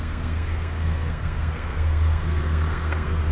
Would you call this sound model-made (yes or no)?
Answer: yes